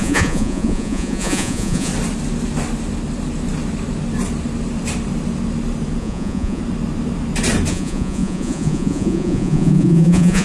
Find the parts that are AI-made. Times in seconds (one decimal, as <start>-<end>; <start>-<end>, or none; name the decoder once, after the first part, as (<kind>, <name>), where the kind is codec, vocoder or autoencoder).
0.0-1.9 (vocoder, Vocos); 6.0-6.6; 7.7-10.4